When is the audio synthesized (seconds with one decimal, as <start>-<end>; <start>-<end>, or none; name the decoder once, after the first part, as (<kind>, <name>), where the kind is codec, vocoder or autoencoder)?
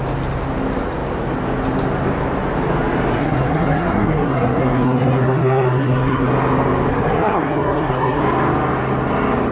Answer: 3.1-6.3 (codec, SNAC); 6.9-8.2